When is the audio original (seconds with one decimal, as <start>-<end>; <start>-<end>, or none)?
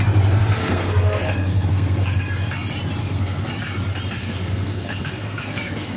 0.0-0.6; 2.2-3.0; 3.5-4.2